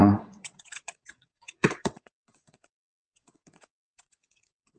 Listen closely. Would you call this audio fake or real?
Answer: fake